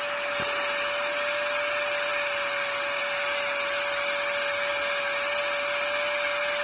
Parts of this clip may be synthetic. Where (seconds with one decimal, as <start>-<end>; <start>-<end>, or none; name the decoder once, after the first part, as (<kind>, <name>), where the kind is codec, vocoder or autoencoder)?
none